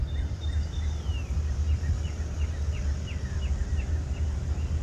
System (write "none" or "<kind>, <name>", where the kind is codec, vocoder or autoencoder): none